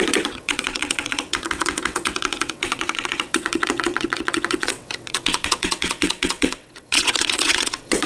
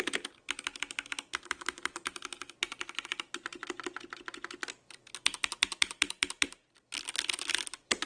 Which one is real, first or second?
second